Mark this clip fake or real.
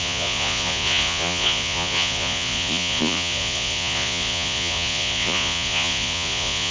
fake